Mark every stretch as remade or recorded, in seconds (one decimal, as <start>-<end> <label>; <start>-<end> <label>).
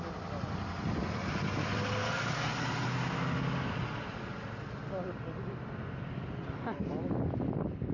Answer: 0.0-7.9 recorded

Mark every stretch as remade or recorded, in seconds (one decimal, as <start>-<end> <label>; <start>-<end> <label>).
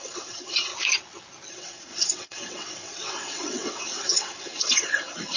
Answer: 0.0-0.7 remade; 0.7-1.5 recorded; 1.5-5.4 remade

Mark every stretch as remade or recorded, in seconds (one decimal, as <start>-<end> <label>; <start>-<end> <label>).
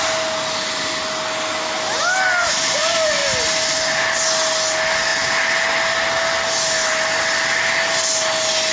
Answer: 0.0-8.7 recorded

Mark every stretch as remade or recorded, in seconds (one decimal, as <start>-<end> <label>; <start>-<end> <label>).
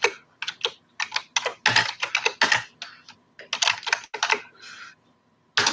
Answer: 0.0-5.7 recorded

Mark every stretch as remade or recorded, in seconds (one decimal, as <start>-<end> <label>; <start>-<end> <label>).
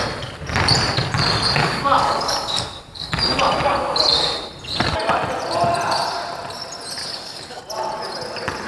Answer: 0.0-1.6 recorded; 1.6-3.1 remade; 3.1-7.0 recorded; 7.0-7.6 remade; 7.6-8.7 recorded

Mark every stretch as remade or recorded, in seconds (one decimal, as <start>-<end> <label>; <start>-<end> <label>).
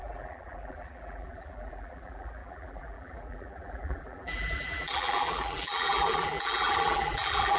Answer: 0.0-7.6 remade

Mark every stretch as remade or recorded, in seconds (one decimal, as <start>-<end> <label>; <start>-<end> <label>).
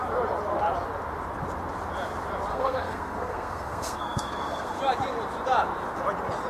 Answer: 0.0-2.5 recorded; 2.5-4.8 remade; 4.8-6.5 recorded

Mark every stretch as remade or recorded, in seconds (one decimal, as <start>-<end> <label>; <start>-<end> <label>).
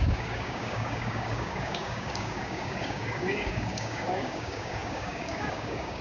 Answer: 0.0-6.0 remade